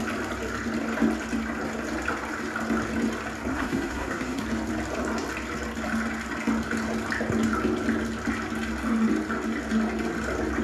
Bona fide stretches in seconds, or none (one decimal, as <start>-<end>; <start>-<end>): 0.0-3.5; 4.4-10.6